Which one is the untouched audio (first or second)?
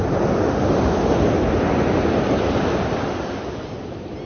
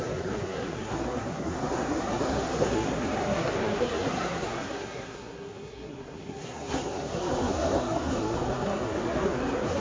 first